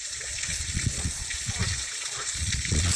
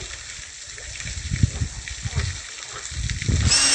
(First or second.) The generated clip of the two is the first